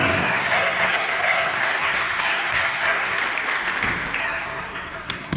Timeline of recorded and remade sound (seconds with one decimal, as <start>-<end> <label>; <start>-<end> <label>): 0.0-3.2 remade; 3.2-4.2 recorded; 4.2-5.4 remade